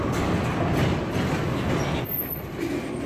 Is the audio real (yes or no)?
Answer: yes